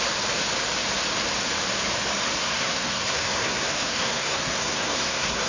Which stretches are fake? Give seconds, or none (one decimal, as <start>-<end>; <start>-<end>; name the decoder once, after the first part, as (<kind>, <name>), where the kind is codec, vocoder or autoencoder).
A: 2.4-5.5 (codec, SNAC)